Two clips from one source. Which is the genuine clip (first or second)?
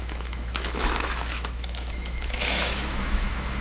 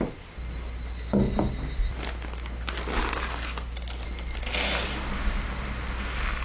second